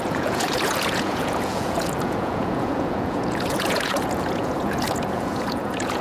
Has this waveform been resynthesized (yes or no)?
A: yes